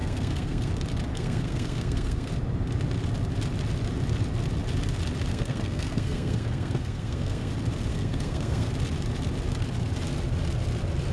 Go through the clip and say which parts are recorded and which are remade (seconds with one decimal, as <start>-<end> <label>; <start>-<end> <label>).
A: 0.0-0.7 remade; 0.7-1.1 recorded; 1.1-2.3 remade; 2.3-5.3 recorded; 5.3-7.5 remade; 7.5-7.9 recorded; 7.9-8.7 remade; 8.7-11.1 recorded